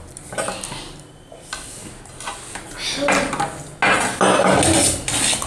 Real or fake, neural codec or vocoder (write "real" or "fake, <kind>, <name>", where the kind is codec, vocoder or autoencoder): real